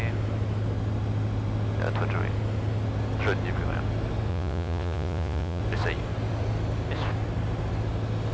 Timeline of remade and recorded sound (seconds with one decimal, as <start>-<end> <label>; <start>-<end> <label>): 0.0-4.3 recorded; 4.3-5.6 remade; 5.6-8.3 recorded

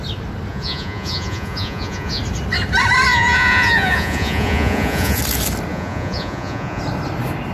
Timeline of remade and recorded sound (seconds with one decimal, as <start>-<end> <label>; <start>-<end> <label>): 0.0-0.5 recorded; 0.5-2.2 remade; 2.2-3.1 recorded; 3.1-5.2 remade; 5.2-5.7 recorded; 5.7-6.8 remade; 6.8-7.5 recorded